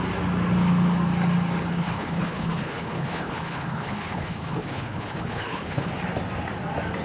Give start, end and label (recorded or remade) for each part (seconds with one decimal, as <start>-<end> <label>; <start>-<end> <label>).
0.0-1.7 recorded; 1.7-5.9 remade; 5.9-7.0 recorded